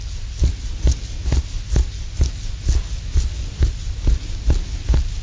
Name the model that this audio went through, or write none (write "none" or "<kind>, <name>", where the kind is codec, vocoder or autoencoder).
none